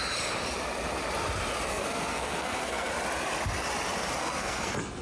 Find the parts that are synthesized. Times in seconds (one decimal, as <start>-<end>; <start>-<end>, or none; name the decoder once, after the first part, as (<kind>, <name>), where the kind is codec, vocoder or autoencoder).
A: 1.7-2.9 (codec, SNAC); 4.2-5.0

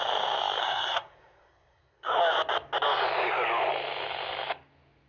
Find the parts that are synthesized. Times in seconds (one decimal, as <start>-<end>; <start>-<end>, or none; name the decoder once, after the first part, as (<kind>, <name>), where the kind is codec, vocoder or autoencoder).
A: 0.6-2.2 (codec, SNAC)

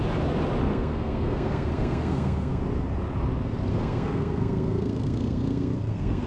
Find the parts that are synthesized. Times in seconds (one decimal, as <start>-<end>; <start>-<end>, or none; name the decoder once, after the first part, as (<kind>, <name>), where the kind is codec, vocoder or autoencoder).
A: 0.7-2.6 (codec, SNAC); 3.7-6.3

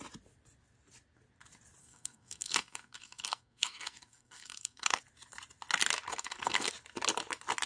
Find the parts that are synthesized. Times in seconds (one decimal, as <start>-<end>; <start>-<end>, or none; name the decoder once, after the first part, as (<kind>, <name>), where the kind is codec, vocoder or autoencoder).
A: 1.8-5.0 (codec, SNAC); 6.1-6.7